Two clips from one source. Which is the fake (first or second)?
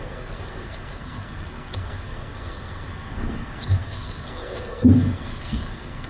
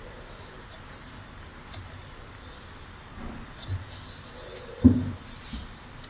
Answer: first